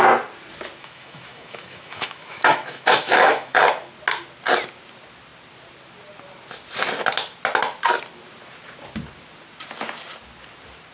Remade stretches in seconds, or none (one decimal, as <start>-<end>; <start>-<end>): 0.8-3.6